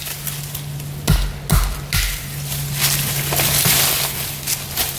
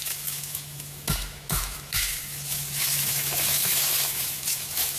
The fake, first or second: second